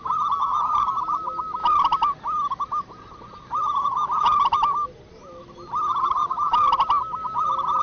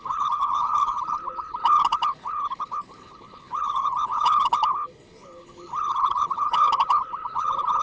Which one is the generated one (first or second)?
second